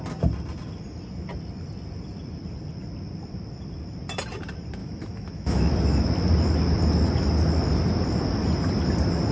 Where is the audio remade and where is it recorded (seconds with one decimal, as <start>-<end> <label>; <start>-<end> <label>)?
0.0-4.8 recorded; 4.8-5.7 remade; 5.7-9.3 recorded